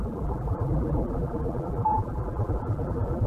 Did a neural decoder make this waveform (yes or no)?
yes